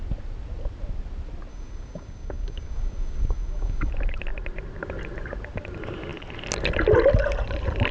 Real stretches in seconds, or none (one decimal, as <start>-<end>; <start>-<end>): 0.0-1.5; 3.9-7.9